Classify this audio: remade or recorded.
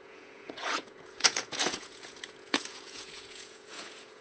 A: remade